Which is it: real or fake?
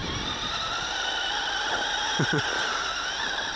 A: fake